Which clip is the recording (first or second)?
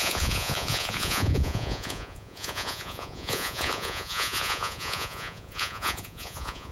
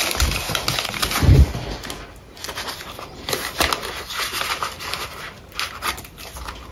second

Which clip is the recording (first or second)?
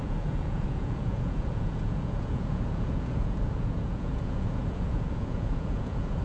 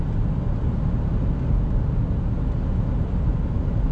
second